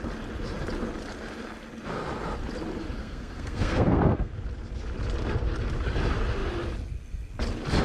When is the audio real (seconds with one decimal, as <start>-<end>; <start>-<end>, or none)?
0.0-3.0; 4.3-7.8